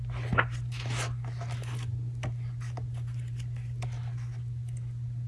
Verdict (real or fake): real